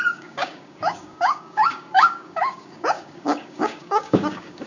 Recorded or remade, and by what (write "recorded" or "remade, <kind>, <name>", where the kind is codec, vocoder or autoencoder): remade, codec, DAC